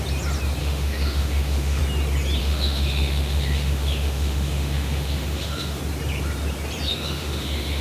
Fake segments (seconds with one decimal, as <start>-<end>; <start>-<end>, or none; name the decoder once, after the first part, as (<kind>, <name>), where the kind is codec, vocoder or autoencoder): 0.6-1.8 (autoencoder, DAC-VAE); 2.4-5.8; 6.9-7.8